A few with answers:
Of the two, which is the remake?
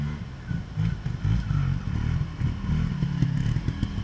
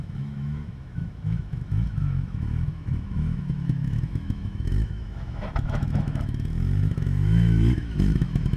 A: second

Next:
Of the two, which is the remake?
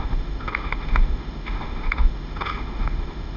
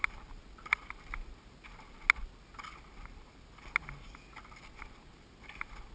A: first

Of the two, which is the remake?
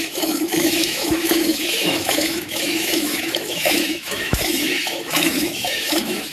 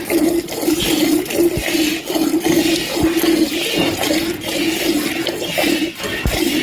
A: first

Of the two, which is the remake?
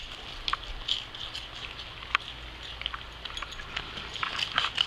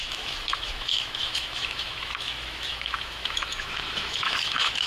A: second